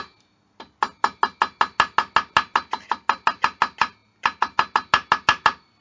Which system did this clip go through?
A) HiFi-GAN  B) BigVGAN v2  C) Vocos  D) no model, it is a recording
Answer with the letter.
D